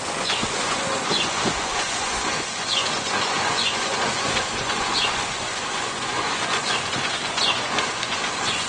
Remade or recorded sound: remade